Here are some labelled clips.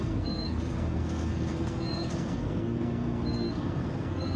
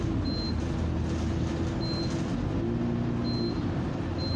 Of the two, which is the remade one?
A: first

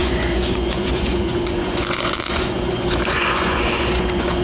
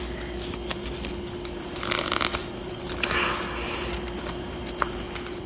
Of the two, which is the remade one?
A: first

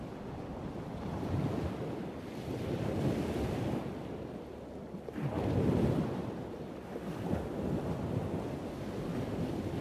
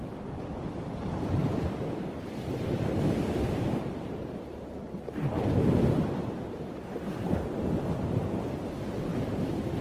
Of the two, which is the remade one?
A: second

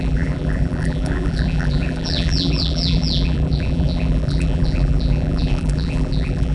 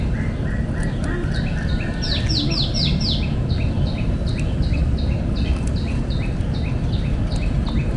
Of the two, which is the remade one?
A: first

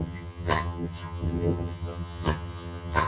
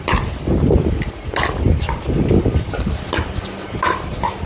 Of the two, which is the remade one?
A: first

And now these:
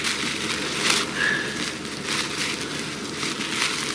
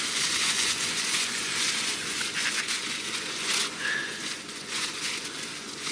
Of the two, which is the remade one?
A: second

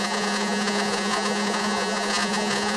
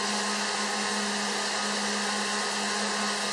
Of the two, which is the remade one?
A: first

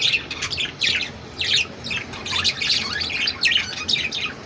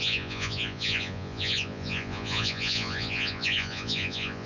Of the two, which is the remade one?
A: second